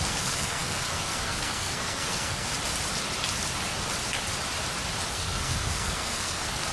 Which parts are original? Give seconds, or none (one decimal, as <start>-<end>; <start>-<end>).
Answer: 2.5-5.1